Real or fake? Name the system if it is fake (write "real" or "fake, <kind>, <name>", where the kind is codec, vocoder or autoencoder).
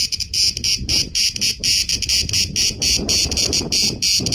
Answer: real